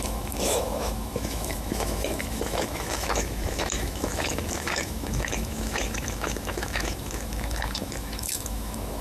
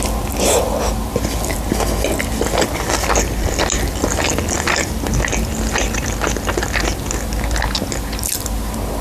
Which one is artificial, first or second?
first